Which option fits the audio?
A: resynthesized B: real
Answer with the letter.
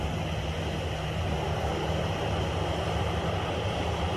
B